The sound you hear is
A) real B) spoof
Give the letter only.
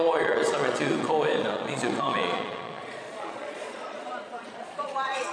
B